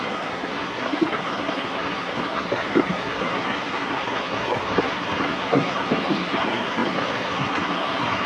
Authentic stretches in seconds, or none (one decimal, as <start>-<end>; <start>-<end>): none